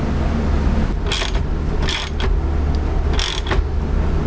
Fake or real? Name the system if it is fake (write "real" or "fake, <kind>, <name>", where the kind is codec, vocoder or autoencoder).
real